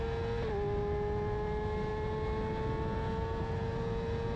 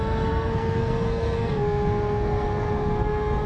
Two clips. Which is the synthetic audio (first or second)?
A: second